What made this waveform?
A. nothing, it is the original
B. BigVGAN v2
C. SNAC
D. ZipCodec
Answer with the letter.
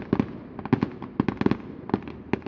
A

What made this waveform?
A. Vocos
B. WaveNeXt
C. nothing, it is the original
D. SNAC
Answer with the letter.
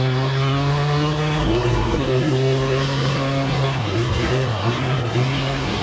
D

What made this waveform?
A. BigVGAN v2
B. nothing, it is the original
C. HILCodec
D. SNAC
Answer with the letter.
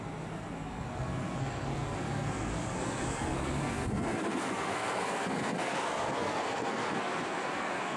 D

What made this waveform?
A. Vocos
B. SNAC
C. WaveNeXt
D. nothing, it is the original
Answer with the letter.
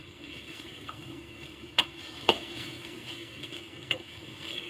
B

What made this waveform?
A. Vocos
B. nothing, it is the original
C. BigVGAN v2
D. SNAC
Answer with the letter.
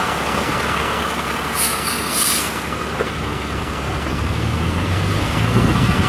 D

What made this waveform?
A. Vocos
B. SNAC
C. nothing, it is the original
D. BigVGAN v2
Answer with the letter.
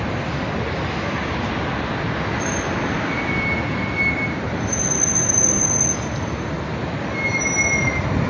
C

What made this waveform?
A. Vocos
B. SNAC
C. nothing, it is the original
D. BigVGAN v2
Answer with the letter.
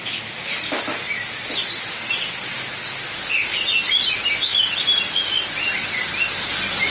C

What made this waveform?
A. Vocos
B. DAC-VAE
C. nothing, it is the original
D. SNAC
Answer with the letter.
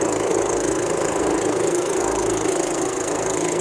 D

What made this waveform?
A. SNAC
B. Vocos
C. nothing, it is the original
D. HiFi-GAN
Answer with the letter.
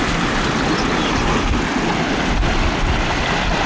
C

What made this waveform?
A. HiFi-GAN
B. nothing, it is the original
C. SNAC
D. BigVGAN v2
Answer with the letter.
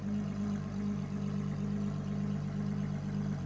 B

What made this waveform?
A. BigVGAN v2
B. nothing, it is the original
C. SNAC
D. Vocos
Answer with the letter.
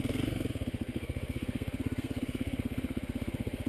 C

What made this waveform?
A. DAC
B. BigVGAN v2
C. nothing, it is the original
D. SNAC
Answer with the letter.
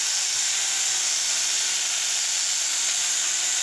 C